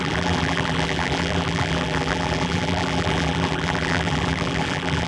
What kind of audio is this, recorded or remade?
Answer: remade